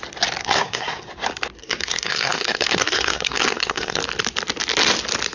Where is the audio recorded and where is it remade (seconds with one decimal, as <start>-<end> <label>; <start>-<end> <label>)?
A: 0.0-0.4 recorded; 0.4-1.1 remade; 1.1-1.6 recorded; 1.6-4.0 remade; 4.0-5.3 recorded